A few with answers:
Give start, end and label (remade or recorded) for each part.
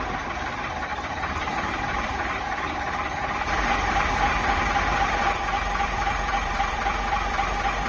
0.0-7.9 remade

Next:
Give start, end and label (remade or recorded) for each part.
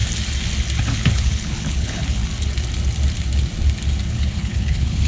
0.0-0.8 recorded; 0.8-2.2 remade; 2.2-4.1 recorded; 4.1-5.1 remade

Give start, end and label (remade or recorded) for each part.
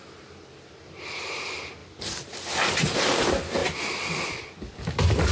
0.0-5.3 recorded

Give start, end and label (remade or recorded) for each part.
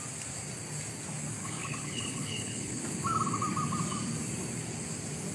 0.0-1.4 recorded; 1.4-2.8 remade; 2.8-5.3 recorded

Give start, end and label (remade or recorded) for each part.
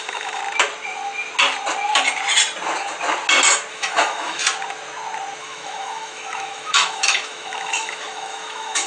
0.0-0.4 remade; 0.4-3.7 recorded; 3.7-4.4 remade; 4.4-5.4 recorded; 5.4-8.9 remade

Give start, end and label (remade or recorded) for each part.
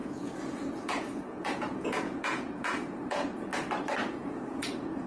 0.0-3.5 remade; 3.5-4.1 recorded; 4.1-5.1 remade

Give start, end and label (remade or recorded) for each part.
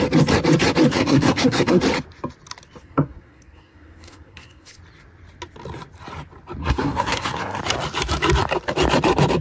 0.0-0.9 recorded; 0.9-1.8 remade; 1.8-2.8 recorded; 2.8-4.8 remade; 4.8-6.6 recorded; 6.6-7.6 remade; 7.6-9.4 recorded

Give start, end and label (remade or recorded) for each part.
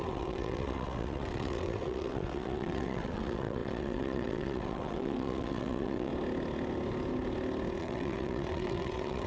0.0-6.1 remade; 6.1-7.8 recorded; 7.8-9.3 remade